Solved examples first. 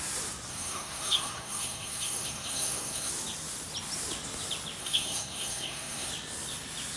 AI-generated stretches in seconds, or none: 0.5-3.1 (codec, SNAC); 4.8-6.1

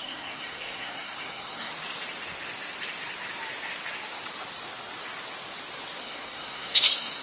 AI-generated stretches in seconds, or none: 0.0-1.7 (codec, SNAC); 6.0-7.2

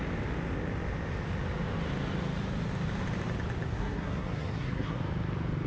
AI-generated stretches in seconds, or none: 3.7-5.0 (codec, SNAC)